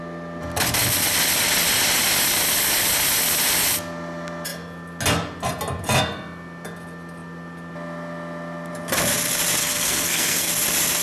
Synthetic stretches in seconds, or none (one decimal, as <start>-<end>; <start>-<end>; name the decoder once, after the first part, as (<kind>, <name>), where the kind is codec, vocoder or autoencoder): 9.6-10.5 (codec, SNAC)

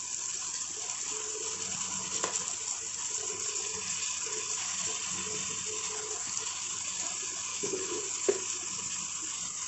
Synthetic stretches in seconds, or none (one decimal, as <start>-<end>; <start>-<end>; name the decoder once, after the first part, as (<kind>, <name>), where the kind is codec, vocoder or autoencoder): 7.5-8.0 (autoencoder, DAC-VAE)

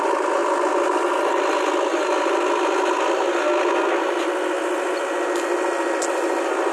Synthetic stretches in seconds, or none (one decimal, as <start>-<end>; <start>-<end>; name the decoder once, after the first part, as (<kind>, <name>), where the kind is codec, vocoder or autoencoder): none